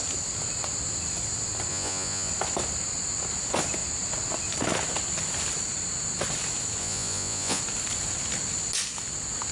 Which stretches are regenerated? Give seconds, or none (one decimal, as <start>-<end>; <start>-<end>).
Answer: 1.7-2.3; 6.8-7.6